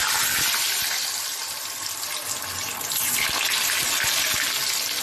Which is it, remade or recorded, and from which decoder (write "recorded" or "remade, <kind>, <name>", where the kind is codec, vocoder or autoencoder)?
recorded